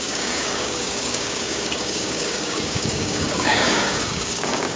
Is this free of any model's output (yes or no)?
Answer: no